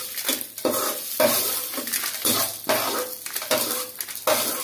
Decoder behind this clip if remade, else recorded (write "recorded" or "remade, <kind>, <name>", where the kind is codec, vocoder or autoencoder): recorded